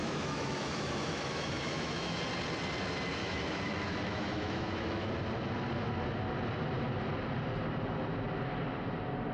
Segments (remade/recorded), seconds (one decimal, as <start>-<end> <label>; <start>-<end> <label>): 0.0-2.2 remade; 2.2-3.2 recorded; 3.2-5.1 remade; 5.1-9.3 recorded